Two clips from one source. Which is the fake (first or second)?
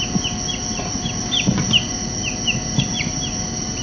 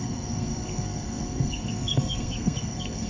second